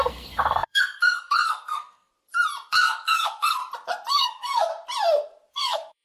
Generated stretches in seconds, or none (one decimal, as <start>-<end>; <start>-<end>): 0.0-2.1; 2.7-3.6; 4.1-4.7; 5.5-6.0